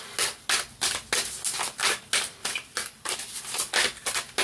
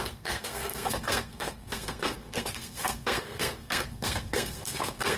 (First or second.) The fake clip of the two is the second